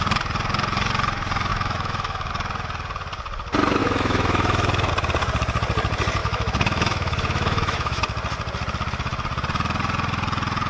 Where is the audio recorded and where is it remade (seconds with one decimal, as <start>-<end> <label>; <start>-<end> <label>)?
0.0-1.5 recorded; 1.5-2.3 remade; 2.3-3.8 recorded; 3.8-4.9 remade; 4.9-6.2 recorded; 6.2-8.0 remade; 8.0-10.7 recorded